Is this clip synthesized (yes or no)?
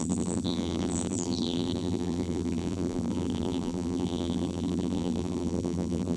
yes